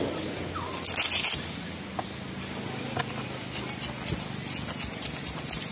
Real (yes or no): yes